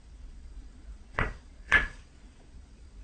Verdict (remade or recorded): remade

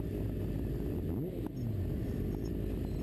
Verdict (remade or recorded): recorded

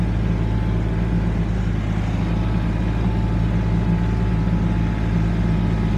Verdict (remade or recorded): recorded